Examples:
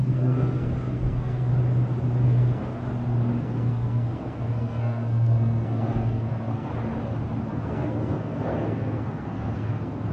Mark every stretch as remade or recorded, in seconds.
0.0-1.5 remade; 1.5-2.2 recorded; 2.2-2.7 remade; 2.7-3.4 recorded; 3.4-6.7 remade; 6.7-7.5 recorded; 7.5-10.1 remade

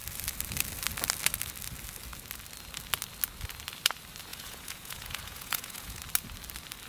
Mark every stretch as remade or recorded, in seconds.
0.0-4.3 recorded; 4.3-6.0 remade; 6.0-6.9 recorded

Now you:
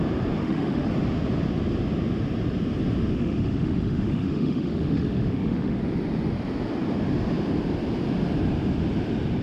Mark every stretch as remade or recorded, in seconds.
0.0-0.4 recorded; 0.4-0.9 remade; 0.9-3.1 recorded; 3.1-5.8 remade; 5.8-9.4 recorded

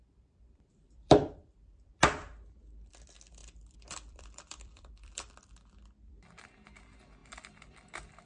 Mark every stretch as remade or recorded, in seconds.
0.0-1.9 remade; 1.9-3.4 recorded; 3.4-5.3 remade; 5.3-8.2 recorded

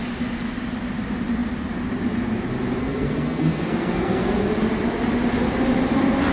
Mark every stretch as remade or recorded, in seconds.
0.0-2.8 recorded; 2.8-4.5 remade; 4.5-6.3 recorded

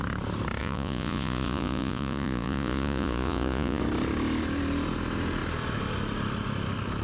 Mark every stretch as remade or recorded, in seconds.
0.0-0.6 recorded; 0.6-3.8 remade; 3.8-7.0 recorded

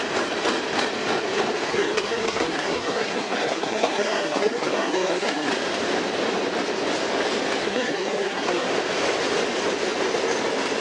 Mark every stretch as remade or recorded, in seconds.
0.0-1.7 recorded; 1.7-5.5 remade; 5.5-7.6 recorded; 7.6-8.7 remade; 8.7-10.8 recorded

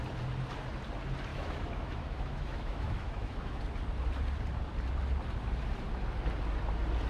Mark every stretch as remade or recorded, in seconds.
0.0-1.3 recorded; 1.3-3.6 remade; 3.6-7.1 recorded